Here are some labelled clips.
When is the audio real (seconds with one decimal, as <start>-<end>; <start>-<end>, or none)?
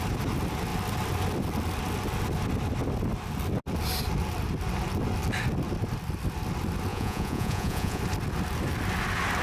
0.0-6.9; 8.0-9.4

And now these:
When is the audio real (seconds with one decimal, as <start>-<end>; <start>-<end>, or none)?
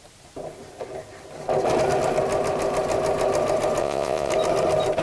0.0-3.8; 4.3-5.0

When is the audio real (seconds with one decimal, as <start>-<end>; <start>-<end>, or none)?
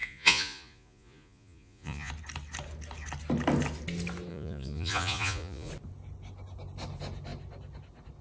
2.1-4.3; 5.7-8.2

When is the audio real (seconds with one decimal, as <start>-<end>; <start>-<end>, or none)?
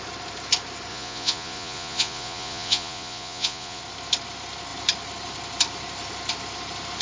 0.0-0.9; 3.8-7.0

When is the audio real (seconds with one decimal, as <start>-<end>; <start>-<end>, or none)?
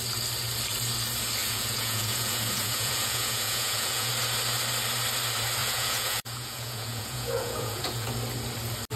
0.0-1.4; 4.1-5.6; 8.1-9.0